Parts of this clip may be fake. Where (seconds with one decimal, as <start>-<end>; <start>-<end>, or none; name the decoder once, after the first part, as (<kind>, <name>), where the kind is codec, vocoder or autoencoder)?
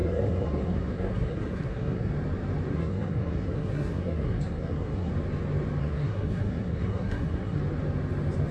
0.0-2.1 (codec, SNAC); 2.7-5.1; 5.8-7.6